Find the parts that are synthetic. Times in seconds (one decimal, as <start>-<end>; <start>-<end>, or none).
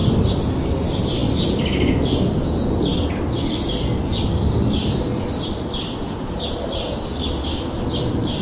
none